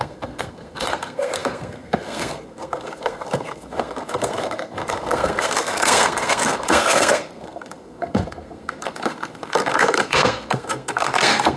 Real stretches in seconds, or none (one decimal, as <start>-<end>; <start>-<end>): none